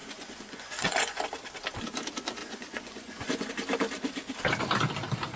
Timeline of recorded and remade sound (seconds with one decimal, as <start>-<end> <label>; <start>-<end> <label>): 0.0-1.2 remade; 1.2-2.4 recorded; 2.4-3.5 remade; 3.5-5.4 recorded